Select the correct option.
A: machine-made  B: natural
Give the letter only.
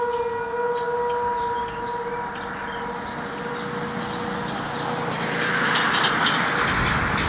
B